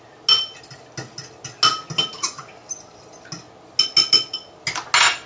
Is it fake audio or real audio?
real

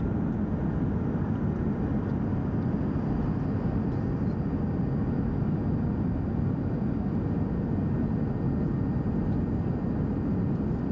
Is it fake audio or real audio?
real